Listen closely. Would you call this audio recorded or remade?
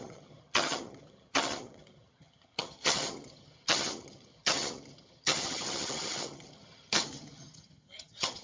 remade